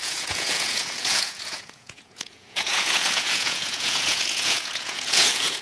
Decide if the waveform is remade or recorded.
remade